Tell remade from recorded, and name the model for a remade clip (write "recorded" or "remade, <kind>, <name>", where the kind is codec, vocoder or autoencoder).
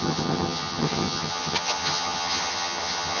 remade, vocoder, HiFi-GAN